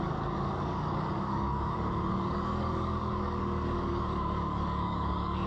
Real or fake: fake